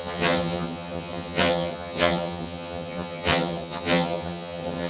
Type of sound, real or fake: fake